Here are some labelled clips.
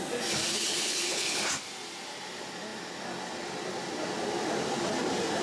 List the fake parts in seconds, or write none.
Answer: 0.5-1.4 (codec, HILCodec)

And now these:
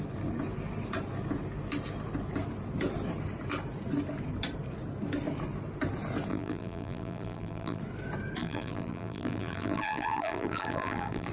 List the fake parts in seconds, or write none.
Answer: 6.3-7.8 (vocoder, BigVGAN v2); 8.4-11.3